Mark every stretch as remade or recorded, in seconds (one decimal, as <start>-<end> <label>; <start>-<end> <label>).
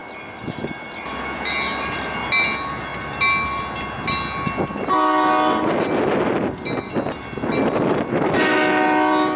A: 0.0-9.4 recorded